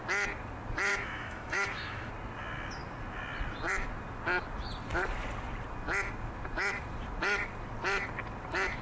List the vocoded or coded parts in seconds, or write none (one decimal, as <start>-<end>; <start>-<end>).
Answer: 0.9-2.1